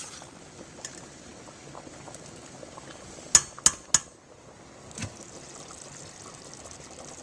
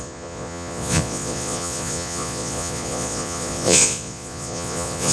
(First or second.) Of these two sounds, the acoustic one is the first